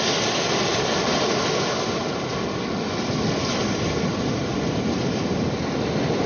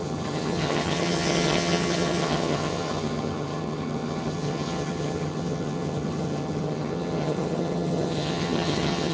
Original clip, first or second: first